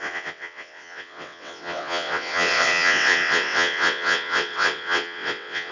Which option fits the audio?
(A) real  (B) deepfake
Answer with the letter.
B